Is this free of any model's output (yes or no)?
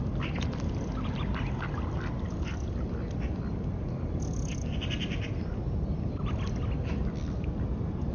yes